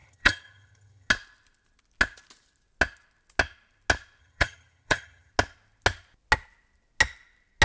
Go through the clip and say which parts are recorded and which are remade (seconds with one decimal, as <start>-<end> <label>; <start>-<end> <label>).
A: 0.0-1.1 remade; 1.1-4.2 recorded; 4.2-5.3 remade; 5.3-7.6 recorded